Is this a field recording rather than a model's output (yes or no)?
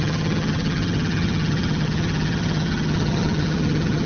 no